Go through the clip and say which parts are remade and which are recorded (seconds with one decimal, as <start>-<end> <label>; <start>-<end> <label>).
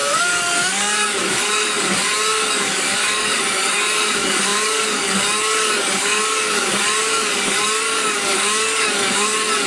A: 0.0-9.7 remade